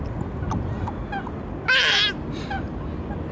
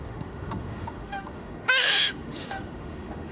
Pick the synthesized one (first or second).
second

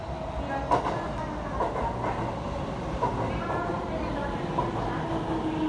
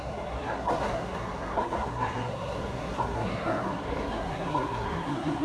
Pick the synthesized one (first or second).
second